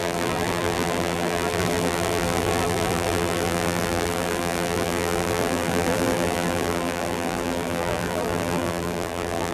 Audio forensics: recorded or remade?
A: remade